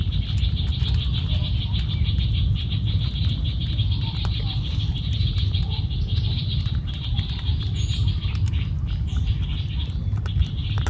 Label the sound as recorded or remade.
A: recorded